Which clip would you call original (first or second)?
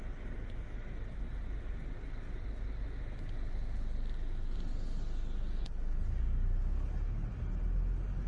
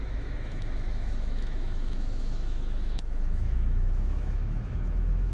first